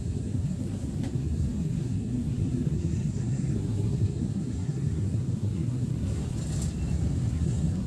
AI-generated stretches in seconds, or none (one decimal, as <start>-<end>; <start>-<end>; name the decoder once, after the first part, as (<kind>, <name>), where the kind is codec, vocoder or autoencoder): 0.0-6.4 (codec, SNAC); 7.3-7.9